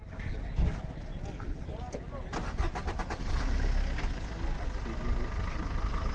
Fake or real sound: real